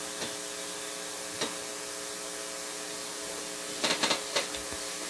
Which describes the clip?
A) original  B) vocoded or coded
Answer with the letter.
A